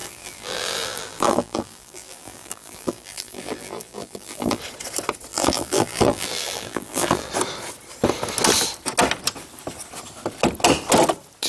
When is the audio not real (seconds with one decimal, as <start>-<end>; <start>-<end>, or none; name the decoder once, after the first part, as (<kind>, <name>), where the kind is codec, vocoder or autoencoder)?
0.0-4.6 (vocoder, BigVGAN v2); 5.3-7.3